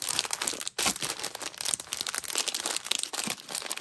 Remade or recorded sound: recorded